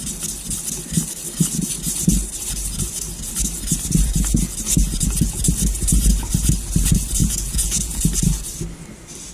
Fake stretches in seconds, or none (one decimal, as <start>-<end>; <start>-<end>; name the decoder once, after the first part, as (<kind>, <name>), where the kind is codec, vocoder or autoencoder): 7.2-8.0 (vocoder, Vocos)